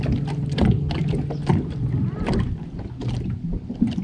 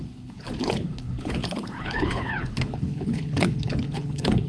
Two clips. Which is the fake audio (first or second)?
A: second